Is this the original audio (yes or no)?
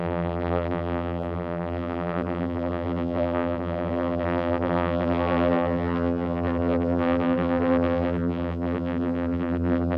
no